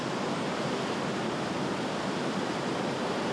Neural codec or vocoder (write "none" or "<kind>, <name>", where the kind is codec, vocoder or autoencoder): vocoder, BigVGAN v2